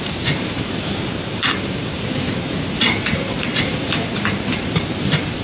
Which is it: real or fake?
fake